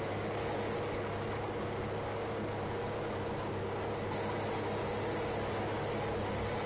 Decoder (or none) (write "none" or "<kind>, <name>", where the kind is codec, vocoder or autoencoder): none